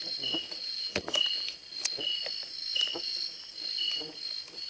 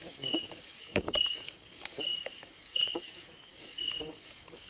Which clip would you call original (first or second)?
first